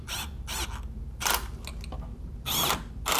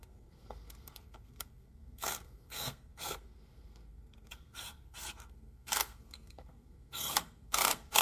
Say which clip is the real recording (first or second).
first